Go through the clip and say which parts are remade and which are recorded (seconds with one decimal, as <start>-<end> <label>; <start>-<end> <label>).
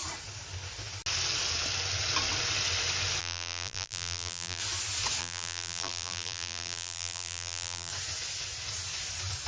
0.0-3.2 recorded; 3.2-4.6 remade; 4.6-5.2 recorded; 5.2-7.9 remade; 7.9-9.5 recorded